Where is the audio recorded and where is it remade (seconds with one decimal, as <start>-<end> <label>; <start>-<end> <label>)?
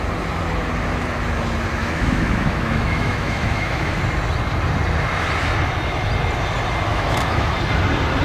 0.0-1.8 recorded; 1.8-4.0 remade; 4.0-6.9 recorded; 6.9-7.5 remade; 7.5-8.2 recorded